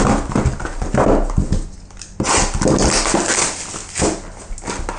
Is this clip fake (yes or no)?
no